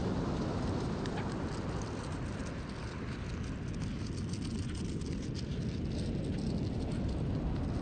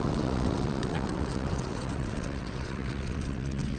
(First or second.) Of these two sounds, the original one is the first